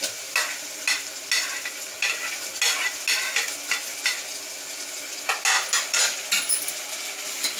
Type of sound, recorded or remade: recorded